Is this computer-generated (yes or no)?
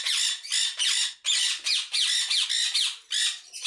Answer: no